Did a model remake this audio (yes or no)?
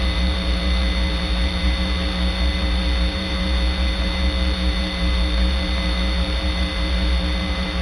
yes